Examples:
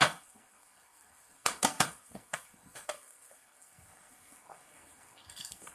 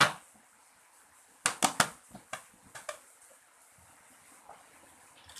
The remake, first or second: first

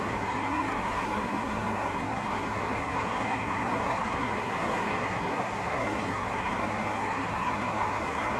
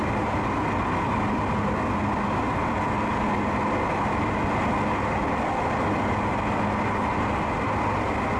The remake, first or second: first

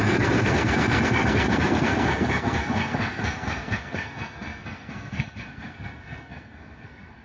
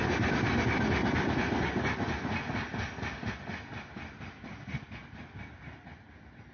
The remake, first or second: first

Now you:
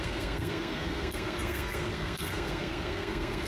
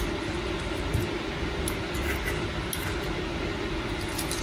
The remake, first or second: first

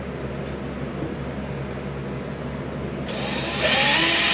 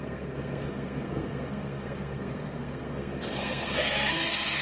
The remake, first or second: second